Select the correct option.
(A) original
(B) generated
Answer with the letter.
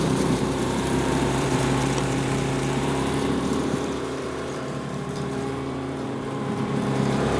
B